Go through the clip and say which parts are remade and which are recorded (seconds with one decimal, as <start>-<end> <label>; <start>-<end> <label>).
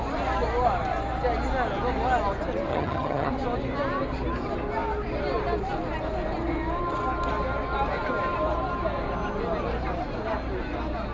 0.0-2.7 recorded; 2.7-3.3 remade; 3.3-11.1 recorded